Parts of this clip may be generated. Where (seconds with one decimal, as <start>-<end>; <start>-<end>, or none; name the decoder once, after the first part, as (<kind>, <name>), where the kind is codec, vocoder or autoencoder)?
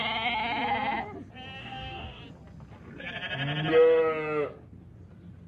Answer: 1.6-2.2 (codec, DAC)